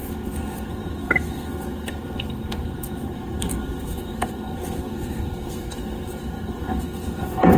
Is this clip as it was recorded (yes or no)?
no